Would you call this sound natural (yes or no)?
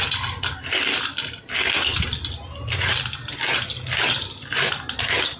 yes